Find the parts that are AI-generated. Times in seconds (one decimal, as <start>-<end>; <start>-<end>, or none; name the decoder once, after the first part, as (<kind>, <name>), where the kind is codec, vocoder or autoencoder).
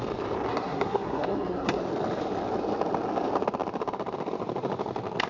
0.5-1.8 (codec, SNAC)